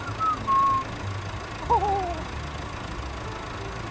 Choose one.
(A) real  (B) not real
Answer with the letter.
A